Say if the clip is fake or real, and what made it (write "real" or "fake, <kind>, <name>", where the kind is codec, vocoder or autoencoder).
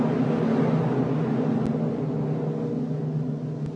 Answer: real